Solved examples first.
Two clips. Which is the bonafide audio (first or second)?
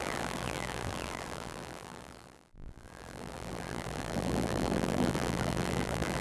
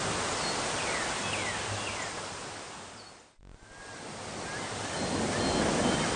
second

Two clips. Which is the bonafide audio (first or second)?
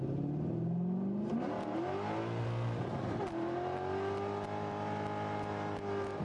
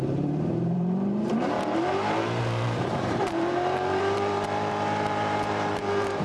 first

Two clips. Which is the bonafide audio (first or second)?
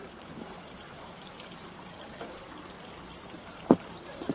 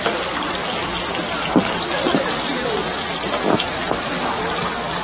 second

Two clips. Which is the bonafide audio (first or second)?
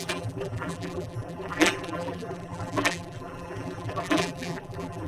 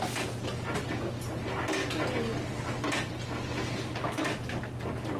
second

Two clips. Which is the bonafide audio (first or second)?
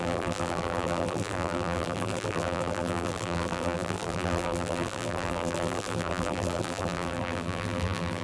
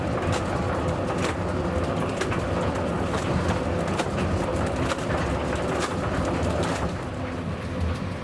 second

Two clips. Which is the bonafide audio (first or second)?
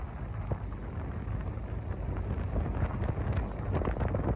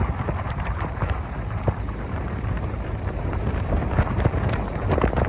first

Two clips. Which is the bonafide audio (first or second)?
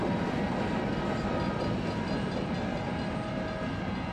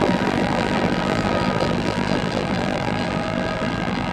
first